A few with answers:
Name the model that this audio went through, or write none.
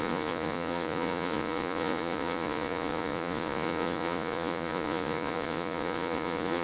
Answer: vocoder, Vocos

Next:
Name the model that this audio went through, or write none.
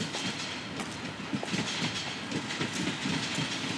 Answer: none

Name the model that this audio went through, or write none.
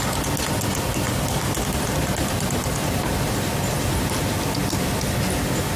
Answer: none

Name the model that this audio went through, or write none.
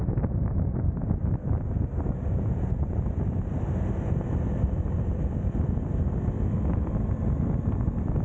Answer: none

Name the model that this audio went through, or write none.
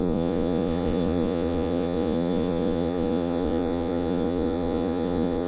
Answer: vocoder, Vocos